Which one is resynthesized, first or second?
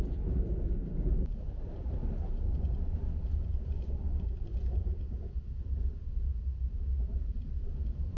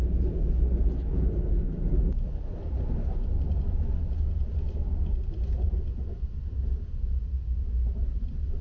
first